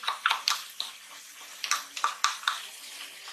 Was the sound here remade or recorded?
recorded